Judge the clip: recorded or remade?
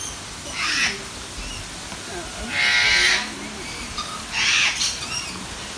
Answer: recorded